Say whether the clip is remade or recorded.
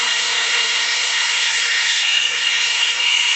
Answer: remade